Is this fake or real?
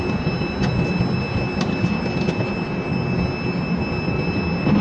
real